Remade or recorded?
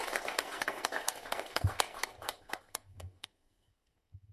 remade